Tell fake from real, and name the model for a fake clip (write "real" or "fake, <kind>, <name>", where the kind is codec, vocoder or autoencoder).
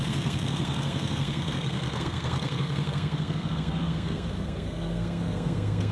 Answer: fake, codec, SNAC